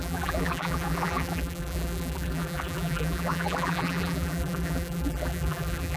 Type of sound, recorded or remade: remade